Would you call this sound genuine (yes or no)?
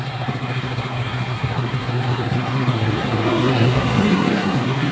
no